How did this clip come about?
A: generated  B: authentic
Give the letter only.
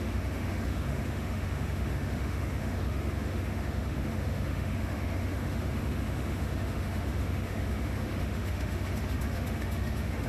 A